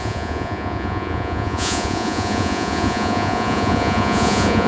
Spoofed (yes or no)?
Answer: yes